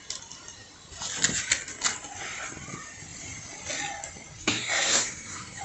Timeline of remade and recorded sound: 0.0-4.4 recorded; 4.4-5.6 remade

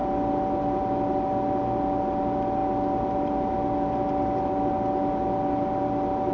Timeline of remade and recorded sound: 0.0-6.3 recorded

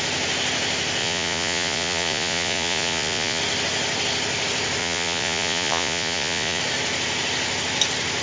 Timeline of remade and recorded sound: 0.0-1.0 recorded; 1.0-3.4 remade; 3.4-4.8 recorded; 4.8-6.6 remade; 6.6-8.2 recorded

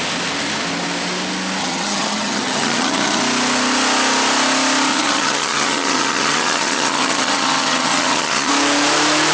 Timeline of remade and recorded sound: 0.0-1.6 recorded; 1.6-3.2 remade; 3.2-4.9 recorded; 4.9-8.5 remade; 8.5-9.3 recorded

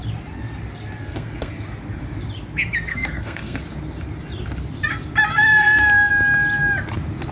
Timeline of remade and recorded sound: 0.0-1.0 recorded; 1.0-1.5 remade; 1.5-2.9 recorded; 2.9-3.6 remade; 3.6-5.3 recorded; 5.3-6.1 remade; 6.1-7.3 recorded